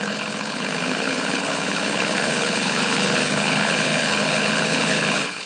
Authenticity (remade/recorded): remade